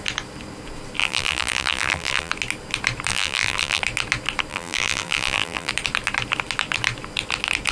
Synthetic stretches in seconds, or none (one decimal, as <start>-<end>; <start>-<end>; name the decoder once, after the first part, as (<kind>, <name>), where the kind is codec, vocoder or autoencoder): 1.0-2.3 (vocoder, BigVGAN v2); 3.1-3.8; 4.5-5.7